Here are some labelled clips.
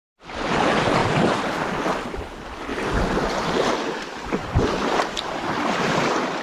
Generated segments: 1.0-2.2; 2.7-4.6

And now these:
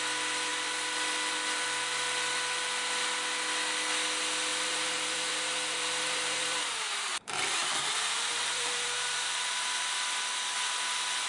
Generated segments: 4.5-9.4

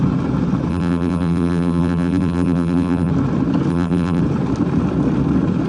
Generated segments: 0.7-3.1; 3.7-4.2